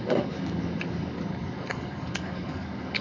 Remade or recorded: remade